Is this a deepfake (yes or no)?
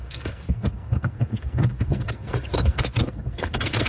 yes